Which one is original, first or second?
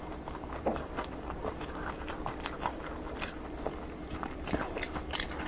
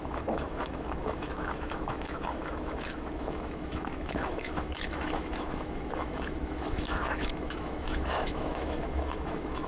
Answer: first